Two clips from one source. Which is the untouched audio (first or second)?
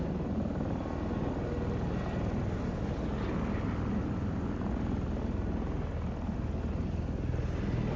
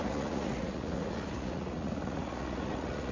first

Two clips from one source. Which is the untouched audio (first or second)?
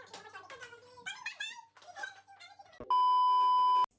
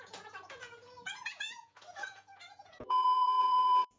first